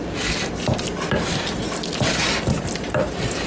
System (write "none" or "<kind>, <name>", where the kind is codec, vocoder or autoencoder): none